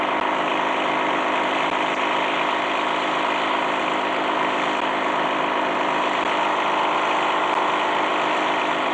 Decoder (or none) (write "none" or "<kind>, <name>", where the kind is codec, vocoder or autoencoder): none